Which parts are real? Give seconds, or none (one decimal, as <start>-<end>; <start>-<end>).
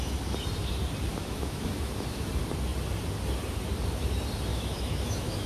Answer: 0.0-1.1; 2.3-4.5